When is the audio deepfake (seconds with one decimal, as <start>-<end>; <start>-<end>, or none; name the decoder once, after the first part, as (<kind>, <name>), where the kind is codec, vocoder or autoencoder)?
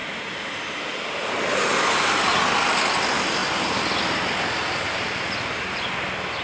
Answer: none